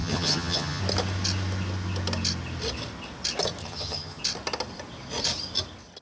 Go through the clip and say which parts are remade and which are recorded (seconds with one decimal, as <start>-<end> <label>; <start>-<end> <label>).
0.0-0.8 remade; 0.8-3.6 recorded; 3.6-4.2 remade; 4.2-6.0 recorded